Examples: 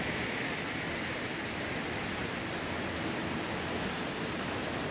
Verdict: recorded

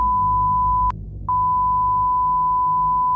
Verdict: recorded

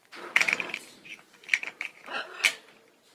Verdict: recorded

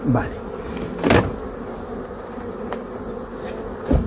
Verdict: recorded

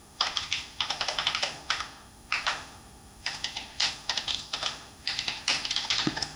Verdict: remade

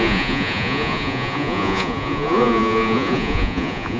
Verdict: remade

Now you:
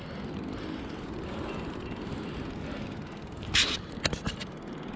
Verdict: recorded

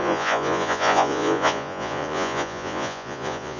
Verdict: remade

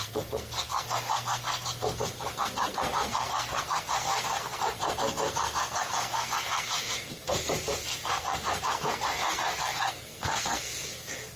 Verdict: remade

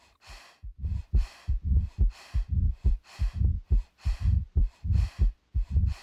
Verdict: recorded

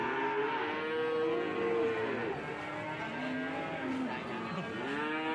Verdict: recorded